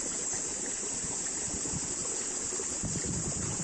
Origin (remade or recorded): recorded